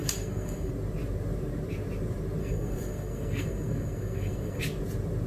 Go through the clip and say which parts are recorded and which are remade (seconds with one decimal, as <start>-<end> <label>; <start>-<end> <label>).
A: 0.0-0.7 remade; 0.7-2.4 recorded; 2.4-4.6 remade; 4.6-5.3 recorded